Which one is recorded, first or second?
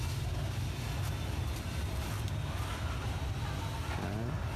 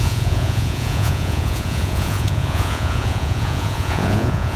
first